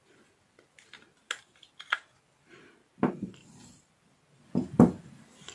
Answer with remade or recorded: recorded